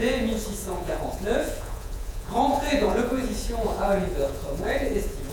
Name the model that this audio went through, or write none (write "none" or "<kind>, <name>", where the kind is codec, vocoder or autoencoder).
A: vocoder, Vocos